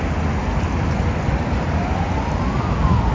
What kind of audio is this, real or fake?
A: real